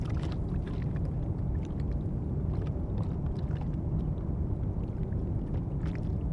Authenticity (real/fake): fake